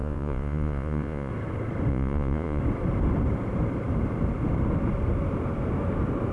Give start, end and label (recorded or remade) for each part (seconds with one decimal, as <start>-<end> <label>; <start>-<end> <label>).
0.0-1.3 remade; 1.3-1.9 recorded; 1.9-2.6 remade; 2.6-6.3 recorded